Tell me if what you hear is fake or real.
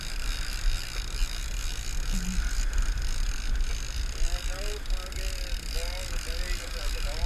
real